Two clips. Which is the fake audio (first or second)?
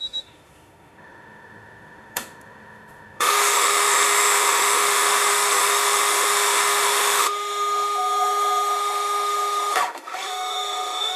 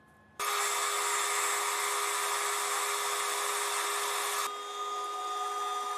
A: first